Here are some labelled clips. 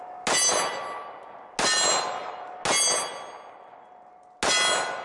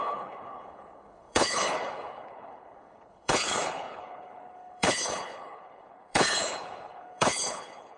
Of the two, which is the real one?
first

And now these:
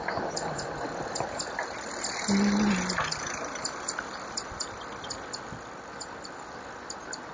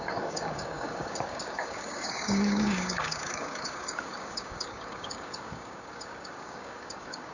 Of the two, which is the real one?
first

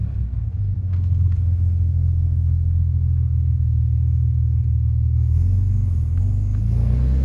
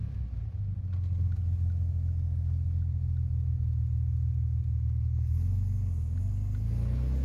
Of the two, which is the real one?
second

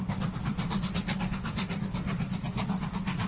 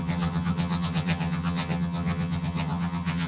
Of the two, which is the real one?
first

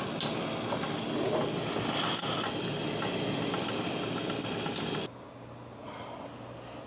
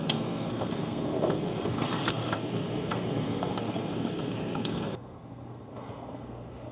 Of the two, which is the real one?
first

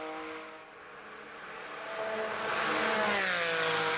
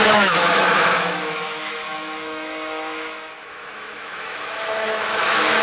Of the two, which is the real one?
first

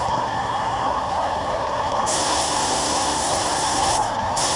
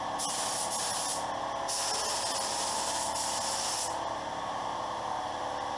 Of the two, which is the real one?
second